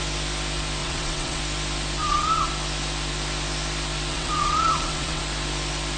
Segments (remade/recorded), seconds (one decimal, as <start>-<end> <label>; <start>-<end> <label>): 0.0-0.8 recorded; 0.8-1.4 remade; 1.4-2.0 recorded; 2.0-2.5 remade; 2.5-4.1 recorded; 4.1-5.2 remade; 5.2-6.0 recorded